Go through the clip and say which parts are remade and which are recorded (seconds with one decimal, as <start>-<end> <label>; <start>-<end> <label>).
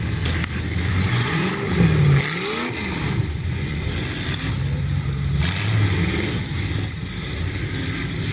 0.0-0.9 recorded; 0.9-1.5 remade; 1.5-3.3 recorded; 3.3-3.9 remade; 3.9-8.3 recorded